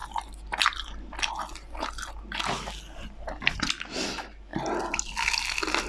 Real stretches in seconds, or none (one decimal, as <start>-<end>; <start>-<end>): 0.0-5.9